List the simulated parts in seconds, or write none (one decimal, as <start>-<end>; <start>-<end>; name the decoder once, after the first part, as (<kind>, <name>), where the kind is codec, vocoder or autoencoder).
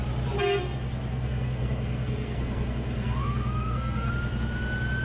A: 1.1-4.1 (codec, SNAC)